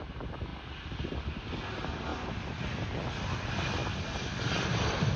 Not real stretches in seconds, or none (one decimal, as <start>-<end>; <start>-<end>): none